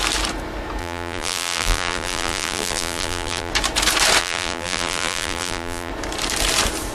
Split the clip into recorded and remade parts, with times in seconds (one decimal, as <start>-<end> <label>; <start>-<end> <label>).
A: 0.0-0.8 recorded; 0.8-3.5 remade; 3.5-4.2 recorded; 4.2-5.9 remade; 5.9-6.9 recorded